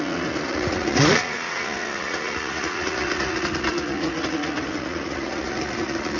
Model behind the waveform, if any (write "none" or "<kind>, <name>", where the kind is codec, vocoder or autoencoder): vocoder, Vocos